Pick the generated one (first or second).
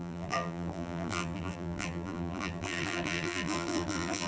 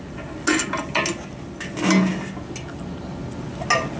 first